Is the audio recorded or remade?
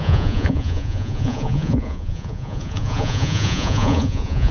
remade